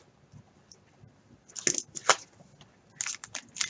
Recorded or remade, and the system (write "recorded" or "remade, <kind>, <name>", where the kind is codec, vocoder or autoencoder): recorded